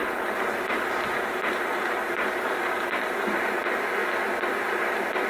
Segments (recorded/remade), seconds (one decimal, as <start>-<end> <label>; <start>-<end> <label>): 0.0-4.0 remade; 4.0-4.7 recorded; 4.7-5.3 remade